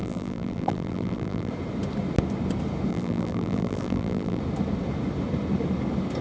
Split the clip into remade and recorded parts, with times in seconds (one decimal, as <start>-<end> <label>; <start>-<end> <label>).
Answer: 0.0-1.5 remade; 1.5-2.9 recorded; 2.9-4.4 remade; 4.4-6.2 recorded